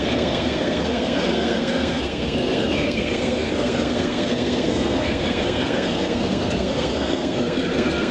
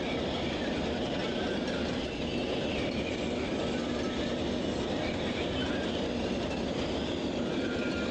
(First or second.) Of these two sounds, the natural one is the second